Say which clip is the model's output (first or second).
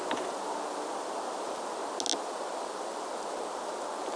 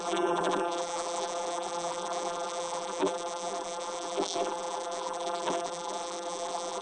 second